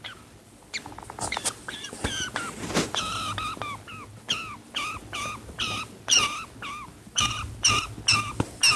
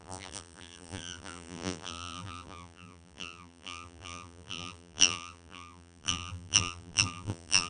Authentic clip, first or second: first